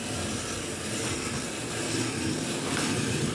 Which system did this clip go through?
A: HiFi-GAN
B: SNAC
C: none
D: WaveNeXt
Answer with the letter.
C